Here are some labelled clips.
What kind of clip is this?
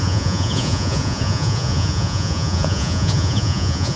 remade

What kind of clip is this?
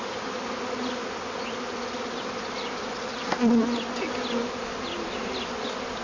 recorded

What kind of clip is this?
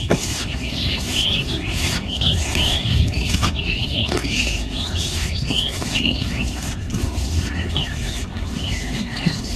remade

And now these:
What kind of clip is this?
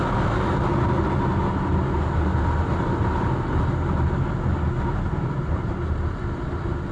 recorded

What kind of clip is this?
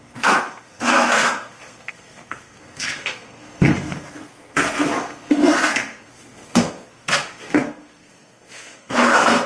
remade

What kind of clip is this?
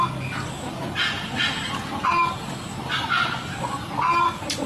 recorded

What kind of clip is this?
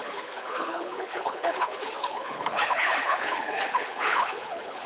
remade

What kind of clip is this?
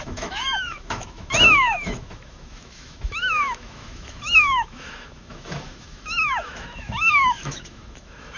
remade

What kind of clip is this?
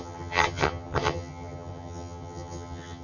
remade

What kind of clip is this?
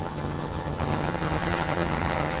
remade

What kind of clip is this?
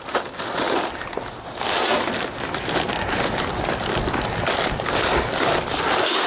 recorded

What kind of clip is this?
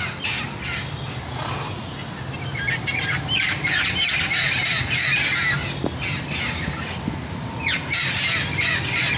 recorded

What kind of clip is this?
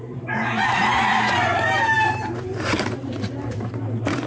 remade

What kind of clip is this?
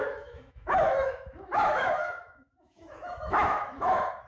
remade